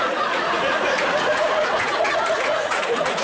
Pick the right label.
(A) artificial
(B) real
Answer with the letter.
A